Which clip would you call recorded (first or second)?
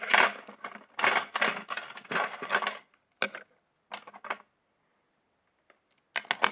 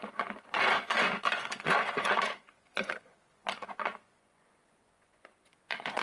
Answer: first